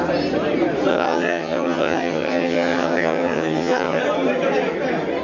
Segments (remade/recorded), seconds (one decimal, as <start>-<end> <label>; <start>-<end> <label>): 0.0-0.9 recorded; 0.9-4.0 remade; 4.0-5.2 recorded